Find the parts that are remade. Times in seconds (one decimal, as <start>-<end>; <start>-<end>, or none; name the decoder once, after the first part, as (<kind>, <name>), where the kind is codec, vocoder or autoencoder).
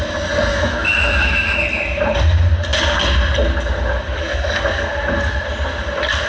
0.5-1.6 (autoencoder, DAC-VAE)